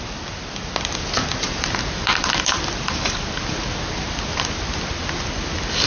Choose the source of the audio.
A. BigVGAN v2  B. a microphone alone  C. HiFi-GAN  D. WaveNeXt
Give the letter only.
A